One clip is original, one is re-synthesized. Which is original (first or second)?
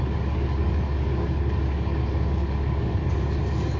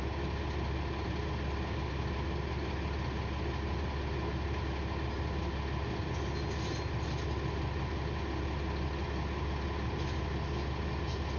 second